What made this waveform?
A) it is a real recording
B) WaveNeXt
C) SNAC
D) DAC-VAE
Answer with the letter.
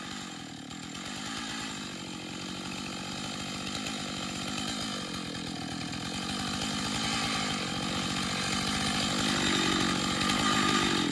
A